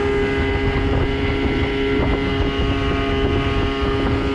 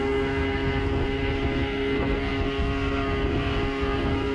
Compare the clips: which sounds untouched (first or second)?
first